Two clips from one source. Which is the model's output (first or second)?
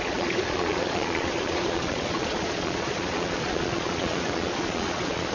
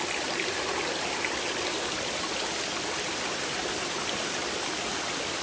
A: first